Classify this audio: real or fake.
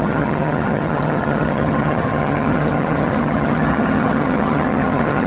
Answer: fake